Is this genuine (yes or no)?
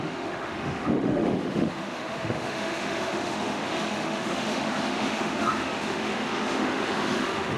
no